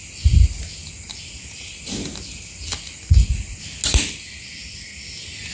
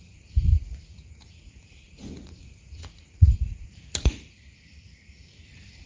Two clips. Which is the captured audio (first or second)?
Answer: first